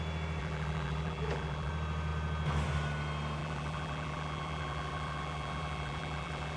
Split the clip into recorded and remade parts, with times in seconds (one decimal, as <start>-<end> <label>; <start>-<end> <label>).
0.0-0.4 recorded; 0.4-1.7 remade; 1.7-3.4 recorded; 3.4-6.6 remade